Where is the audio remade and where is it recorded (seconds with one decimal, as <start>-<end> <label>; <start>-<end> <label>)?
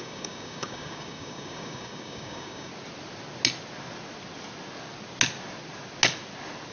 0.0-2.7 remade; 2.7-6.7 recorded